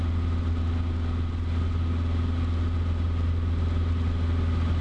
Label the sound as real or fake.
real